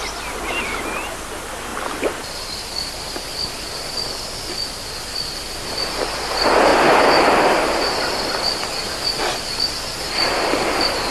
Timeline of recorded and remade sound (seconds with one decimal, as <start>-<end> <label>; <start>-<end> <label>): 0.0-1.7 recorded; 1.7-3.8 remade; 3.8-6.7 recorded; 6.7-9.4 remade; 9.4-11.1 recorded